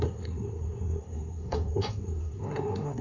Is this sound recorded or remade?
remade